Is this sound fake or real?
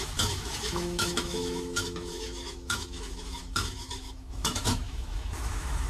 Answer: fake